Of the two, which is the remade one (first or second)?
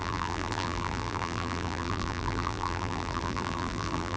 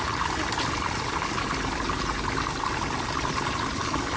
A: first